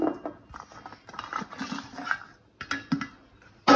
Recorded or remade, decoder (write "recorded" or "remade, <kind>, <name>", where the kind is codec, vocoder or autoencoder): recorded